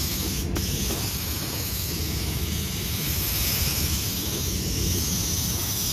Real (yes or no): no